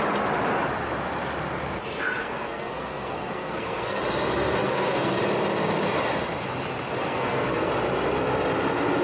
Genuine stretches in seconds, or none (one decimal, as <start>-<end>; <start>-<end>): 0.0-2.2; 4.0-4.6; 5.2-7.0; 7.7-9.0